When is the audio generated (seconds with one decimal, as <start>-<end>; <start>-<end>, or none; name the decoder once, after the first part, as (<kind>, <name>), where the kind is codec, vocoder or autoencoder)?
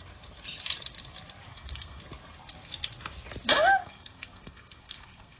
1.5-2.0 (codec, SNAC); 3.8-5.4